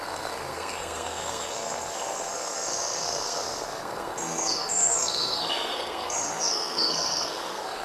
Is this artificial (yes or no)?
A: yes